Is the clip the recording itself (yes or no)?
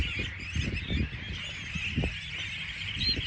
yes